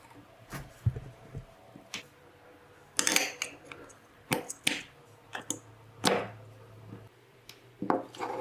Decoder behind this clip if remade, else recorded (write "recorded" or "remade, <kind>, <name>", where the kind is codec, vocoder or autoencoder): recorded